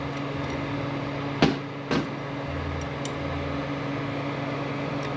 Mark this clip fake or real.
real